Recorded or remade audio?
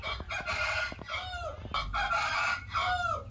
recorded